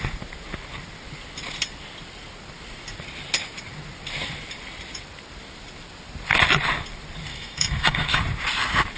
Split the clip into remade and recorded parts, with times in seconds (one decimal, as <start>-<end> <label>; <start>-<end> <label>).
0.0-7.3 recorded; 7.3-8.2 remade; 8.2-9.0 recorded